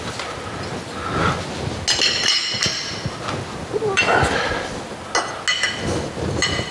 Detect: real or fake real